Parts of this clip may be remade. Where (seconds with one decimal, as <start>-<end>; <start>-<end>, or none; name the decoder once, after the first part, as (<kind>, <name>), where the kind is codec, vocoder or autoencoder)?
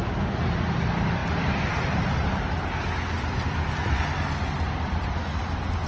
none